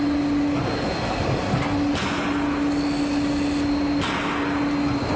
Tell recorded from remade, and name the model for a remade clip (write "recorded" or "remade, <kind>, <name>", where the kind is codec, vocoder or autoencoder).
recorded